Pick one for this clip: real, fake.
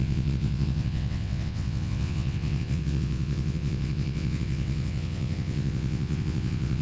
fake